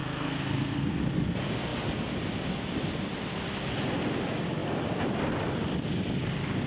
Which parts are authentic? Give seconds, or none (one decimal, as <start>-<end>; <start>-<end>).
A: 1.0-6.7